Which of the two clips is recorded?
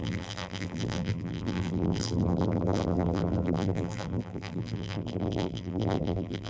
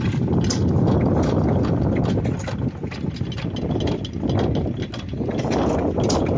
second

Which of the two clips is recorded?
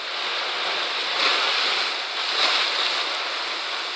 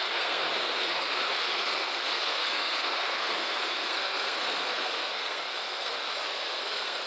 first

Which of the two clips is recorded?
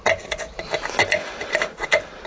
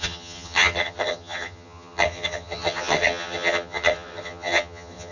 first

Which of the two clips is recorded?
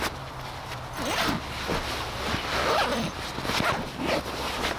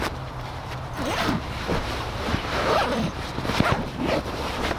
first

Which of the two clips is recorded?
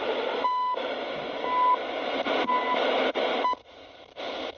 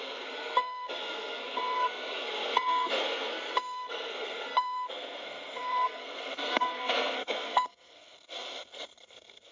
first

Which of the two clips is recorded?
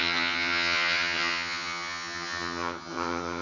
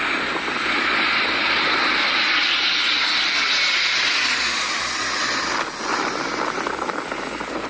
second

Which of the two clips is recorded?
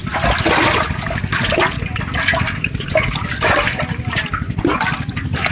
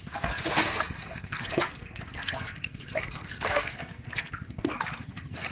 first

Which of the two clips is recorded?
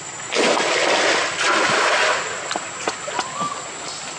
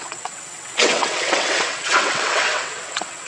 first